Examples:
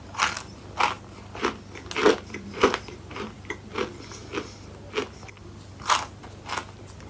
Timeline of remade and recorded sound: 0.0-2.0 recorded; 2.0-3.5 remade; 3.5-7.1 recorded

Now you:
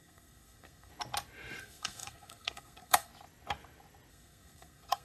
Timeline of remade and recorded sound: 0.0-0.9 remade; 0.9-1.6 recorded; 1.6-3.1 remade; 3.1-4.1 recorded; 4.1-5.0 remade

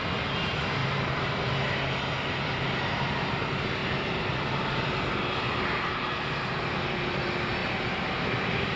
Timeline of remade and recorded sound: 0.0-0.8 recorded; 0.8-1.5 remade; 1.5-3.8 recorded; 3.8-6.6 remade; 6.6-7.6 recorded; 7.6-8.8 remade

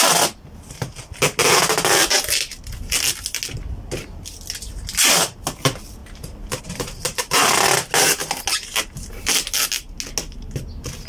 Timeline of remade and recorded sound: 0.0-11.1 recorded

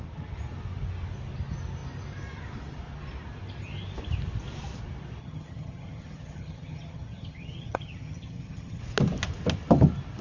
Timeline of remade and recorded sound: 0.0-5.2 recorded; 5.2-8.8 remade; 8.8-10.2 recorded